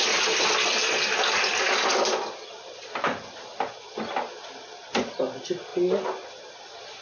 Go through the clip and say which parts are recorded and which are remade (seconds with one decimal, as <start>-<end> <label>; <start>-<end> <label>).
0.0-7.0 recorded